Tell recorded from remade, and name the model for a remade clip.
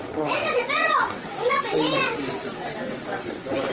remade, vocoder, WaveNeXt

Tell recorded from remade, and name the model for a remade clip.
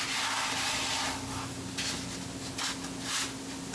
recorded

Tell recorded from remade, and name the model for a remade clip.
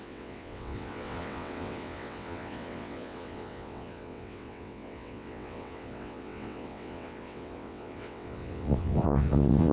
remade, vocoder, WaveNeXt